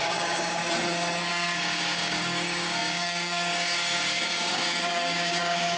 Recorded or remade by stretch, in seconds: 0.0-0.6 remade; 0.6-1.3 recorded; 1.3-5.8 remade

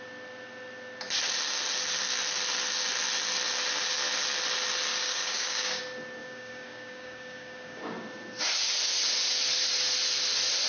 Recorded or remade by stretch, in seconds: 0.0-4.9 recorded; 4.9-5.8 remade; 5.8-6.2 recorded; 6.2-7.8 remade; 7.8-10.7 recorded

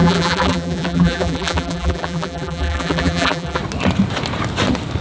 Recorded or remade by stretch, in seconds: 0.0-3.6 remade; 3.6-5.0 recorded